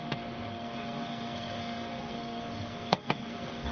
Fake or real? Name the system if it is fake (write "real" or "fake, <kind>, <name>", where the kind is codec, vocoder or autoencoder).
fake, codec, SNAC